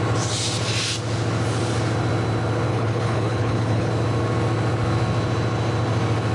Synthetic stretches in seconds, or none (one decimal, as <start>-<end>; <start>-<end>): 2.7-3.9